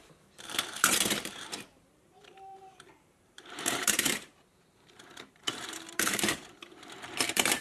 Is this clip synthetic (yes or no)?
yes